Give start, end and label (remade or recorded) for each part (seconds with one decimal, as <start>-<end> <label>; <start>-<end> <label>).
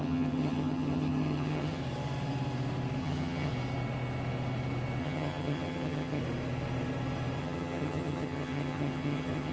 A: 0.0-1.8 remade; 1.8-3.0 recorded; 3.0-3.5 remade; 3.5-5.0 recorded; 5.0-6.2 remade; 6.2-7.4 recorded; 7.4-9.5 remade